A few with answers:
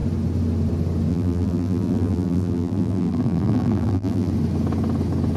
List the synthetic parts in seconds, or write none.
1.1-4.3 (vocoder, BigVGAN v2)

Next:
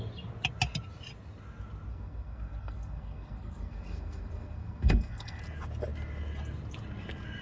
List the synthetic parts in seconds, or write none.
1.9-5.4 (codec, SNAC)

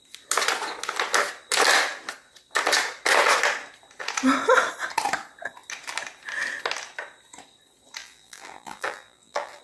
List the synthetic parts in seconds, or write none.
8.0-9.6 (vocoder, BigVGAN v2)

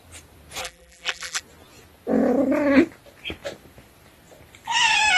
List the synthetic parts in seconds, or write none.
0.6-1.4 (vocoder, BigVGAN v2)

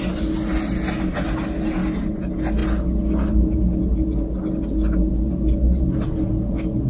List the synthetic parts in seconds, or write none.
none

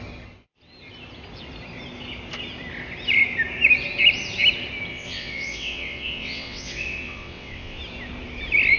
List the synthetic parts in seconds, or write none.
4.9-7.8 (vocoder, WaveNeXt)

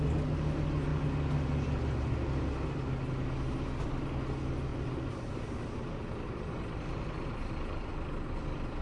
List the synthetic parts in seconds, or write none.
4.7-7.9 (vocoder, BigVGAN v2)

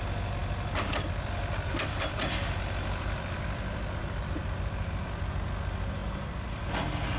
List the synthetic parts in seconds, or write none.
0.4-3.6 (vocoder, BigVGAN v2); 4.0-5.3; 6.0-6.7